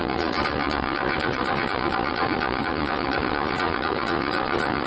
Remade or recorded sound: remade